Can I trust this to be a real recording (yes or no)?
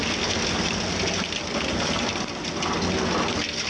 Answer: yes